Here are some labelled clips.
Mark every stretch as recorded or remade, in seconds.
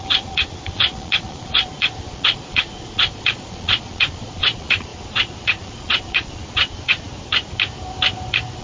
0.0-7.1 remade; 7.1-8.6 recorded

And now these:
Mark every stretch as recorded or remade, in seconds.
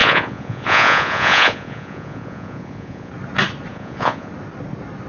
0.0-3.1 remade; 3.1-3.7 recorded; 3.7-4.3 remade; 4.3-5.1 recorded